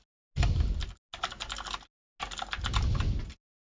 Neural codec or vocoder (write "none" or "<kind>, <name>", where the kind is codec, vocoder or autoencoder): none